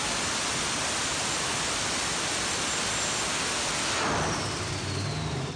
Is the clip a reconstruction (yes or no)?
no